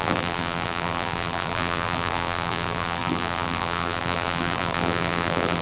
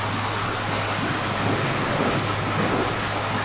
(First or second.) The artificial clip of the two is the first